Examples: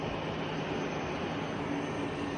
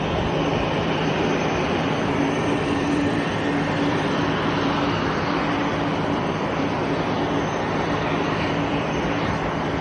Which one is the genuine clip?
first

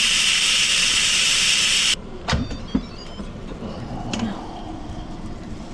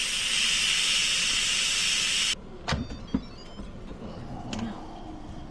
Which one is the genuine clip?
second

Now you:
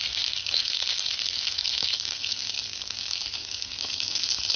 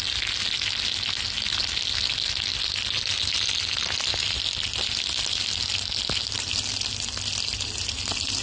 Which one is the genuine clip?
second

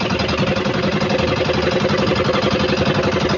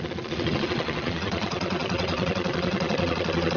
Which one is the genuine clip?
first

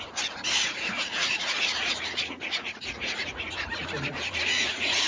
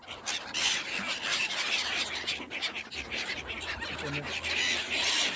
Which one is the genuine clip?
second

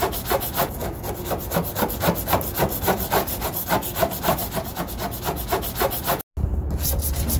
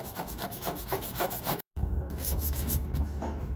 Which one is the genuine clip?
first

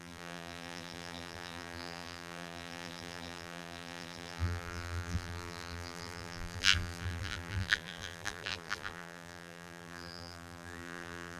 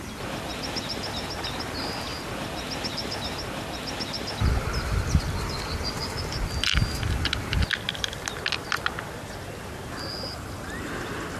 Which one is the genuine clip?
second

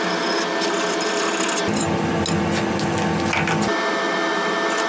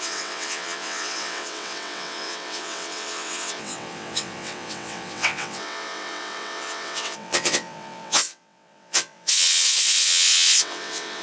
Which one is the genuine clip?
first